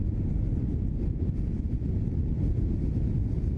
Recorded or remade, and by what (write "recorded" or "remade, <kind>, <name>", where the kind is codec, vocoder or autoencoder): recorded